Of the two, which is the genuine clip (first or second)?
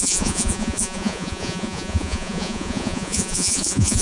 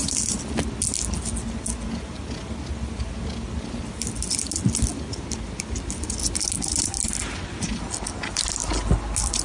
second